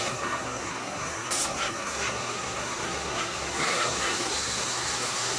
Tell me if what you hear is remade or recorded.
remade